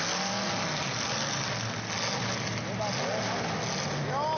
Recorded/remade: recorded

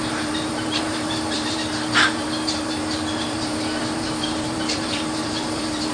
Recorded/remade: remade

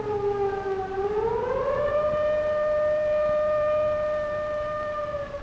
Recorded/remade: recorded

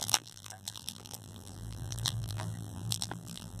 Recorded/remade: remade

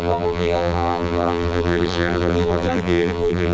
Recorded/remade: remade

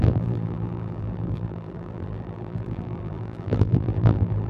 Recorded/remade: remade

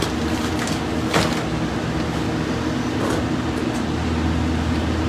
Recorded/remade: recorded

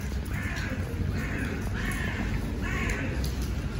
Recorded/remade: recorded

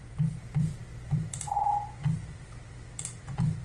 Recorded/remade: remade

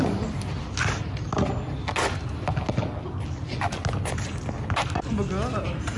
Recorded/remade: recorded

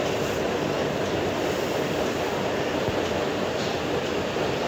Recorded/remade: recorded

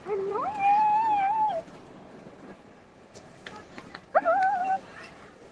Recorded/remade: remade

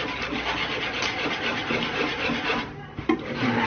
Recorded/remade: recorded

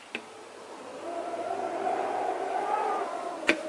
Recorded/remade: recorded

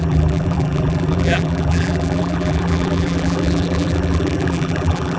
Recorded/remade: remade